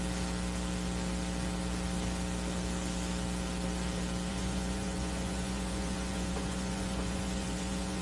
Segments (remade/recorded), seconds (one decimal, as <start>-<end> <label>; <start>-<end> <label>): 0.0-4.3 recorded; 4.3-8.0 remade